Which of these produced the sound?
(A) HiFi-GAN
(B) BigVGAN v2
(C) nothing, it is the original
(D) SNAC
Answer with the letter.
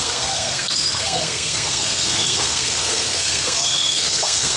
D